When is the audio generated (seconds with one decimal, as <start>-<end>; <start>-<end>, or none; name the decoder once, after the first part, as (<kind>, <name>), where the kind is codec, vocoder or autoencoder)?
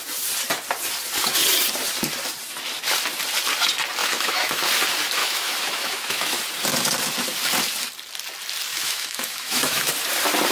4.0-4.7 (autoencoder, DAC-VAE); 5.2-6.4; 8.7-9.9